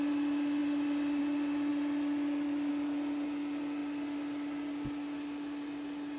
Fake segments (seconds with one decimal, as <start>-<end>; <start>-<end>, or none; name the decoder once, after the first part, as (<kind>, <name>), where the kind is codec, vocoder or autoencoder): none